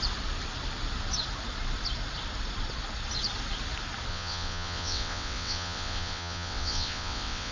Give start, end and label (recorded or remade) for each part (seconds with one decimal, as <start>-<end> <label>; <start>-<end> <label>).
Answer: 0.0-4.1 recorded; 4.1-7.5 remade